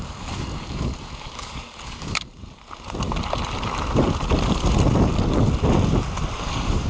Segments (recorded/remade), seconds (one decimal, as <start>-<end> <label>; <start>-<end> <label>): 0.0-2.3 remade; 2.3-6.4 recorded; 6.4-6.9 remade